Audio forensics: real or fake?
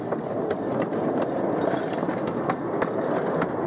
real